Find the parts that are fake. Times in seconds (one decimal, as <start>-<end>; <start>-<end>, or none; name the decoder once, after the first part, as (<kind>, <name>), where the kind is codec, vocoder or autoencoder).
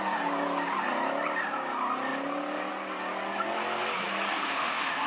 4.4-5.1 (autoencoder, DAC-VAE)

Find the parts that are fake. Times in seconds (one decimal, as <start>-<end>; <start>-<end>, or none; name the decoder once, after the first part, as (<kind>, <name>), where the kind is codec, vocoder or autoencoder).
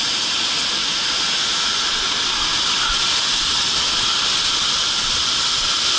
0.8-2.0 (vocoder, Vocos)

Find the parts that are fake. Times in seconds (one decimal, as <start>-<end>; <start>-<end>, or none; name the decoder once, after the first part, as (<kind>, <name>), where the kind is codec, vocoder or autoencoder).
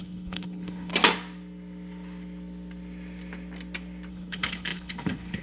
0.0-0.9 (codec, HILCodec); 4.1-5.4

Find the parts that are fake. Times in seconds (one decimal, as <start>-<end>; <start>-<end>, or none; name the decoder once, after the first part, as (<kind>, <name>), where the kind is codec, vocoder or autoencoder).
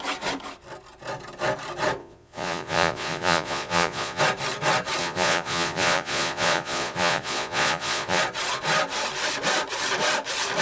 2.0-4.2 (vocoder, Vocos); 5.0-8.2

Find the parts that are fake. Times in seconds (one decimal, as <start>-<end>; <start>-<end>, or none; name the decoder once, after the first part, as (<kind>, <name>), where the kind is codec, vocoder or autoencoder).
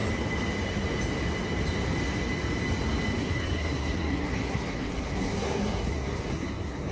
3.2-6.9 (codec, SNAC)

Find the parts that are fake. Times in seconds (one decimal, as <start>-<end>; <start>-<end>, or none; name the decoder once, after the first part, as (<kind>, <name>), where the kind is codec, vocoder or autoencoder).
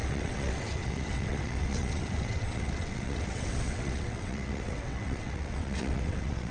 0.0-6.5 (vocoder, WaveNeXt)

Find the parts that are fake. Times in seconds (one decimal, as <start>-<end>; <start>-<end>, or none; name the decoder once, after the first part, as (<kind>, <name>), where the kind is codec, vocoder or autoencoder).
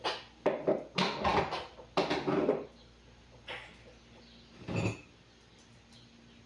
none